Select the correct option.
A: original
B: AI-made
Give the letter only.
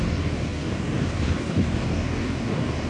B